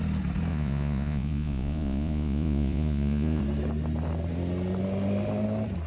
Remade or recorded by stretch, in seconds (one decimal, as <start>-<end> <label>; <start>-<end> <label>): 0.0-0.5 recorded; 0.5-3.4 remade; 3.4-5.9 recorded